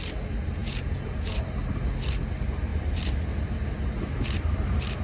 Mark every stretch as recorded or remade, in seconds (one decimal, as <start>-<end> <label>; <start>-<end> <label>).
0.0-0.6 recorded; 0.6-1.4 remade; 1.4-5.0 recorded